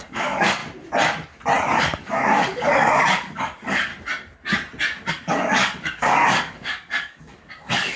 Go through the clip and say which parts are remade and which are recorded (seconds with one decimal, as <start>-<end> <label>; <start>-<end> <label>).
0.0-0.6 remade; 0.6-1.8 recorded; 1.8-3.9 remade; 3.9-5.1 recorded; 5.1-8.0 remade